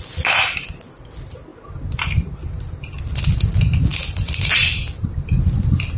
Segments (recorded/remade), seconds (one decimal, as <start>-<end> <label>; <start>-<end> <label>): 0.0-6.0 recorded